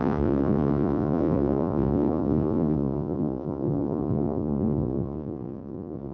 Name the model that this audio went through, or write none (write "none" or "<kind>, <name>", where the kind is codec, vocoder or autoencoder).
vocoder, Vocos